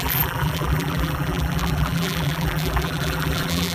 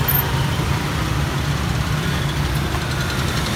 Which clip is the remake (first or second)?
first